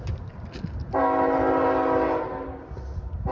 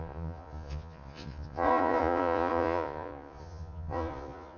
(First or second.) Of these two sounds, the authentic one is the first